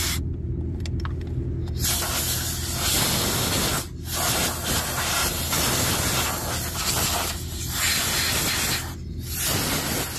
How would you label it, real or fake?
real